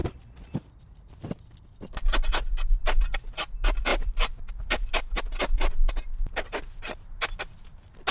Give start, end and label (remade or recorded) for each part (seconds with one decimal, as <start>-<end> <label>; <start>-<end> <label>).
0.0-3.9 recorded; 3.9-5.9 remade; 5.9-8.1 recorded